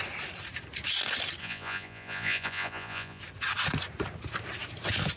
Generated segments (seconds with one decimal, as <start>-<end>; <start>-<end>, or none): 1.4-3.2